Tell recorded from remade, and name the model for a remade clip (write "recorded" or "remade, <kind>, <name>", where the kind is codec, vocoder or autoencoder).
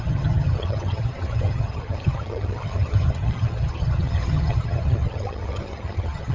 remade, vocoder, HiFi-GAN